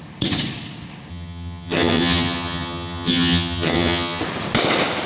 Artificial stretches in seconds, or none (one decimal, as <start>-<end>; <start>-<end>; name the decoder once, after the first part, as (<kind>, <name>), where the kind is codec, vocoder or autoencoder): 1.1-4.2 (vocoder, HiFi-GAN)